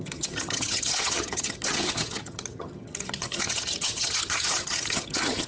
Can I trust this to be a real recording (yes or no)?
no